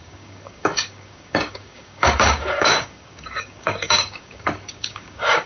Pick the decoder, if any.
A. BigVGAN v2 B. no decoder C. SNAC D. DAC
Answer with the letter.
D